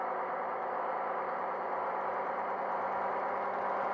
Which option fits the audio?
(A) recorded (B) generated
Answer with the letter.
A